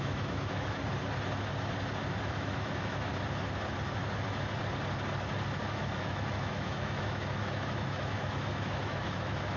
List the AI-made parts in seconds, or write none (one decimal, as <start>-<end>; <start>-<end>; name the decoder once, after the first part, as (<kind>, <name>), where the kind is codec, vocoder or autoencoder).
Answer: 0.0-0.8 (autoencoder, DAC-VAE); 2.2-3.1; 5.6-9.6